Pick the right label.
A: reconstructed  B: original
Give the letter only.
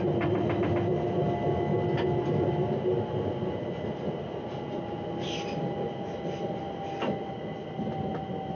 B